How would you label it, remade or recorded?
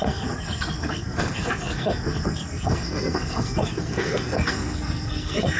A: remade